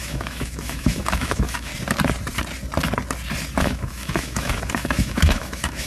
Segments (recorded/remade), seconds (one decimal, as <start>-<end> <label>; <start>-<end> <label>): 0.0-1.7 remade; 1.7-3.6 recorded; 3.6-5.9 remade